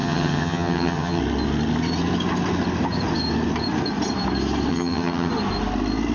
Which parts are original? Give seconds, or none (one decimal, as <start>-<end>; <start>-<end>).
1.2-4.7; 5.3-6.1